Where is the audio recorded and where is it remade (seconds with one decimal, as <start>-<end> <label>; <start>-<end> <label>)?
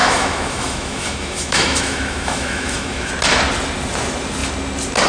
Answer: 0.0-3.1 remade; 3.1-5.1 recorded